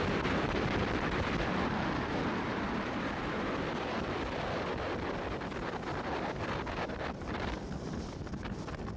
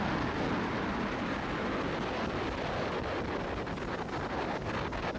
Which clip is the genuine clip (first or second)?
second